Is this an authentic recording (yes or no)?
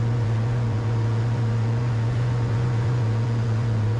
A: no